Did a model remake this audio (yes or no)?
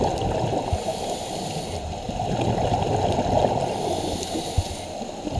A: no